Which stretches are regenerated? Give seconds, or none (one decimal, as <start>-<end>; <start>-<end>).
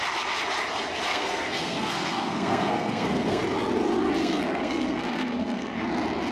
1.1-3.4; 4.2-5.8